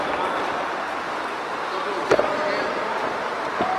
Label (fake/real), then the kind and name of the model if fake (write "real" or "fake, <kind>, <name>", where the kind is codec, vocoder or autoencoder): real